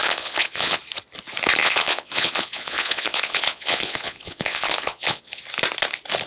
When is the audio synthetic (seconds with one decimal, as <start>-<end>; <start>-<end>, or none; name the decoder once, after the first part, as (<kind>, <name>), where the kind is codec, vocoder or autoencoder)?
0.0-0.8 (vocoder, Vocos); 1.6-5.4